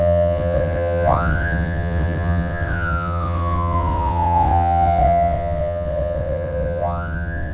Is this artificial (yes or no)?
yes